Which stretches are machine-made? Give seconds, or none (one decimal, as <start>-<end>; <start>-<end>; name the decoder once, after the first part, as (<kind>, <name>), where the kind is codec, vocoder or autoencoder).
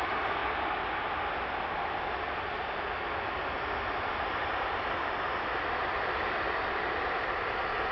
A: none